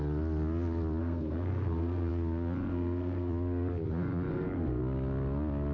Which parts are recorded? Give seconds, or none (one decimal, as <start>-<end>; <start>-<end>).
0.0-1.0; 2.1-2.7; 3.3-4.3; 4.8-5.7